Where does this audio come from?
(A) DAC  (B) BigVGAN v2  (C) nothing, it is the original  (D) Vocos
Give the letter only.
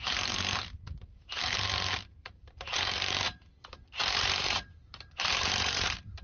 B